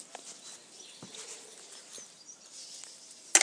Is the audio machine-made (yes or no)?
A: no